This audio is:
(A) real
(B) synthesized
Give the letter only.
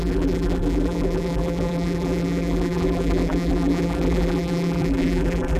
B